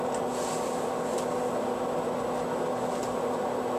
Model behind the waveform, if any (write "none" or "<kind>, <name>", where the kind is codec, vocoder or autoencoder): none